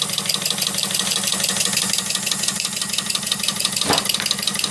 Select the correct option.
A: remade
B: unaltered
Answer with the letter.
B